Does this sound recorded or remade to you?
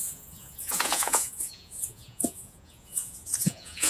remade